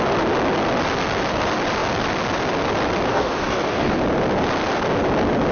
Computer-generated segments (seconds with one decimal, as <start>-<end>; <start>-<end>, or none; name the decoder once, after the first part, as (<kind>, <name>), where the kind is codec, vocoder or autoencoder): 3.1-4.0 (codec, DAC)